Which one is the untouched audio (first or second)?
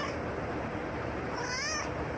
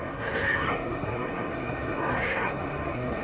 first